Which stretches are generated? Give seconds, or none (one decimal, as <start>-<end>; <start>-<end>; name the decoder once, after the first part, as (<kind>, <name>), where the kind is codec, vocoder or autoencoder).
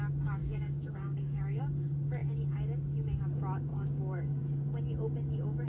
0.4-1.6 (codec, DAC); 3.7-4.4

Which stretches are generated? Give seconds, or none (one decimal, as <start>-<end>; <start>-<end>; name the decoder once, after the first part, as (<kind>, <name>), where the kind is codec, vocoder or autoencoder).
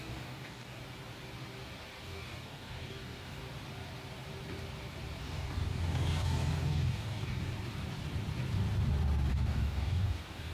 0.0-0.8 (codec, DAC); 2.0-3.4; 5.2-7.5; 9.3-10.5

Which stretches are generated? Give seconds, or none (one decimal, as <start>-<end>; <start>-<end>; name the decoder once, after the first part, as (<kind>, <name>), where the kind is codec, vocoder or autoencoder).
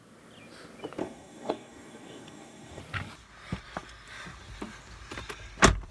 1.0-2.8 (codec, DAC)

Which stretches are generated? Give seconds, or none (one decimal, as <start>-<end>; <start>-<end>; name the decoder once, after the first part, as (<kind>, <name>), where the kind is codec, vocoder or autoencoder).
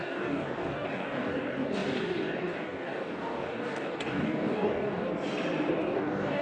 0.0-5.1 (codec, DAC); 5.7-6.4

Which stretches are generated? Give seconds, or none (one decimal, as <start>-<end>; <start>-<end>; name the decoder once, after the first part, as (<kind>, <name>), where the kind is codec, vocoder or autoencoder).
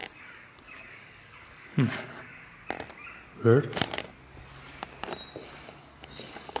0.0-2.5 (codec, DAC); 5.4-6.6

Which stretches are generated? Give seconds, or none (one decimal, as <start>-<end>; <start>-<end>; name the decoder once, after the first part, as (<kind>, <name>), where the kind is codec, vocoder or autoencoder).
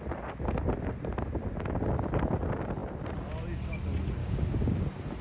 4.2-4.8 (codec, DAC)